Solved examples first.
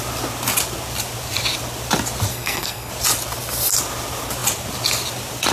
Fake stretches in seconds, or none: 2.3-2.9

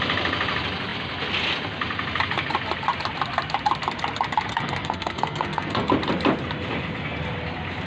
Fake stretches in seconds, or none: 4.5-5.9

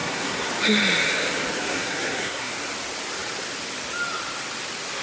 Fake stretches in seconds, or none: 0.0-0.5; 1.6-2.5

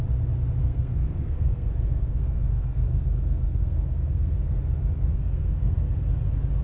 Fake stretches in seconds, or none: 0.6-4.6; 5.1-5.9

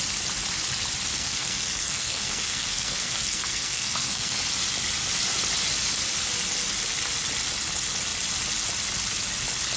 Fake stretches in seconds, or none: 1.1-4.4

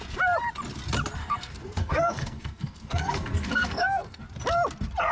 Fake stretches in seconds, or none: 1.2-4.2